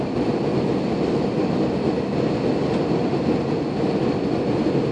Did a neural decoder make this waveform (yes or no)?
no